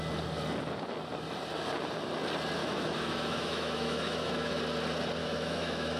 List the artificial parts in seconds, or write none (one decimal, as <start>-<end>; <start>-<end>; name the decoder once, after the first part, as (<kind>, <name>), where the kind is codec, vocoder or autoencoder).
2.6-4.6 (autoencoder, DAC-VAE); 5.2-6.0